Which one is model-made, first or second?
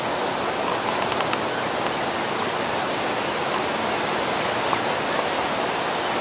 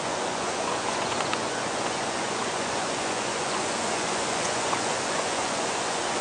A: second